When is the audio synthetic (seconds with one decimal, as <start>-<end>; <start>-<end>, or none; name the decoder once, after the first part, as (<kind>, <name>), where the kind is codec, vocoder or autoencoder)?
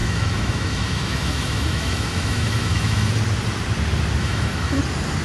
0.0-3.1 (autoencoder, DAC-VAE); 4.2-4.8